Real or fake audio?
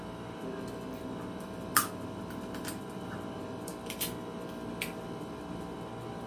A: fake